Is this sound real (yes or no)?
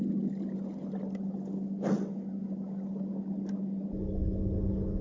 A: yes